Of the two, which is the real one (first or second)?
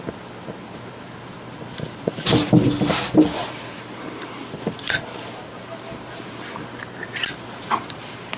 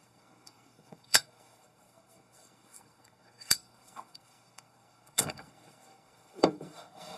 first